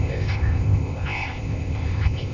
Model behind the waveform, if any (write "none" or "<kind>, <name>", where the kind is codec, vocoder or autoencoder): codec, ZipCodec